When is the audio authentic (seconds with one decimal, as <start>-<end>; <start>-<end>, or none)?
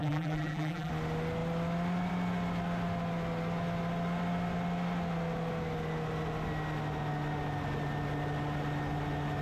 0.9-9.4